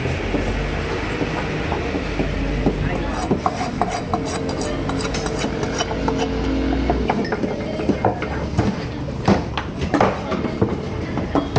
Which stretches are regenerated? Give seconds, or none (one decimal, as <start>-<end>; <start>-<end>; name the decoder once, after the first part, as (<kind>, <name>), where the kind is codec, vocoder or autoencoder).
none